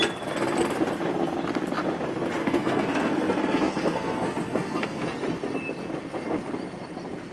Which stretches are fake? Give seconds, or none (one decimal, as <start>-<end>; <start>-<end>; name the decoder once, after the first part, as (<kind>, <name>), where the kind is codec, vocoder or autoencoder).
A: 2.4-5.0 (codec, SNAC)